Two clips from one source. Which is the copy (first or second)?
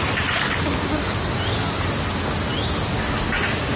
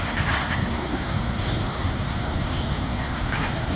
second